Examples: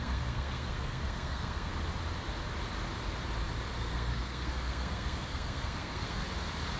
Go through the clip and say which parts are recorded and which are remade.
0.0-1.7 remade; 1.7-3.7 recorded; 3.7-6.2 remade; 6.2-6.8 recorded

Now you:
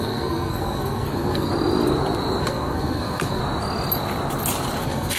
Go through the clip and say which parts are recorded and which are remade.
0.0-1.5 remade; 1.5-2.4 recorded; 2.4-3.4 remade; 3.4-4.8 recorded; 4.8-5.2 remade

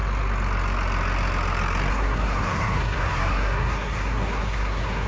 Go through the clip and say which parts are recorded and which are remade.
0.0-1.9 recorded; 1.9-5.1 remade

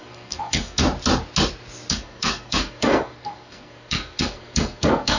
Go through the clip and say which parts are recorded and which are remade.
0.0-0.8 remade; 0.8-1.9 recorded; 1.9-5.2 remade

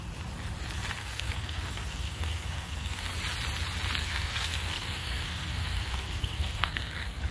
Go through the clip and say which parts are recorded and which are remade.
0.0-1.0 recorded; 1.0-3.1 remade; 3.1-4.0 recorded; 4.0-7.3 remade

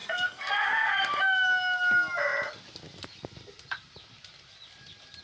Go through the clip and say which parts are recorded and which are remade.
0.0-1.1 remade; 1.1-5.2 recorded

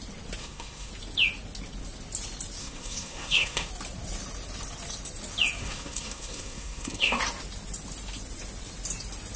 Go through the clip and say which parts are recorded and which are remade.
0.0-0.4 recorded; 0.4-0.9 remade; 0.9-2.6 recorded; 2.6-3.7 remade; 3.7-5.6 recorded; 5.6-7.2 remade; 7.2-9.4 recorded